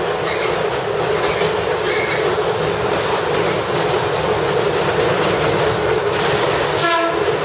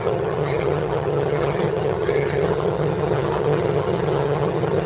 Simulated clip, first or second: second